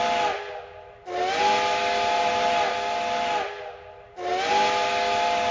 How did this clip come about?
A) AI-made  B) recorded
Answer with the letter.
B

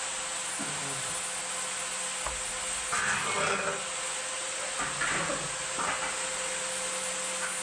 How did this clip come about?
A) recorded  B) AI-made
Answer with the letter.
A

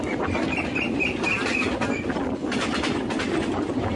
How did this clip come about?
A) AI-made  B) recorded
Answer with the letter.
B